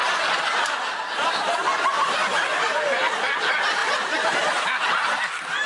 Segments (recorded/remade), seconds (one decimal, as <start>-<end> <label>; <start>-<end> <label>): 0.0-5.7 recorded